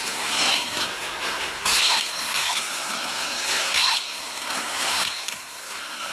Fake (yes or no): yes